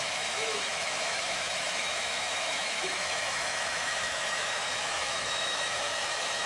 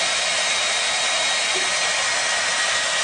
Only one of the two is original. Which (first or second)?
second